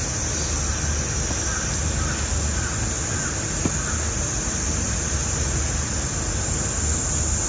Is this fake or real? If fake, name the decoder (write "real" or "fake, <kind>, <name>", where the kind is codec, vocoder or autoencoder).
real